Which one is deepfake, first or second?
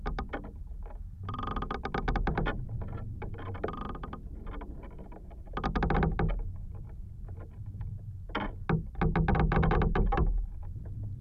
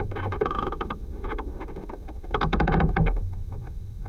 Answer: second